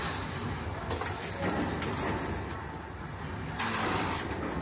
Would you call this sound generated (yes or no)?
no